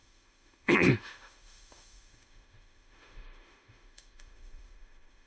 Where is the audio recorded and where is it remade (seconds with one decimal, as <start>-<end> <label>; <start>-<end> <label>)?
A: 0.0-5.3 remade